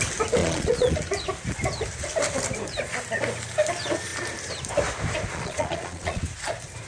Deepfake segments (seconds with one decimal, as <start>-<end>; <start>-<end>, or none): 0.4-1.0; 5.3-6.2